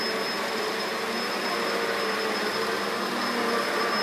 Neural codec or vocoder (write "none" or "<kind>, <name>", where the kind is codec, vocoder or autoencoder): none